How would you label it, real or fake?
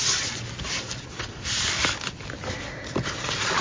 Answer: real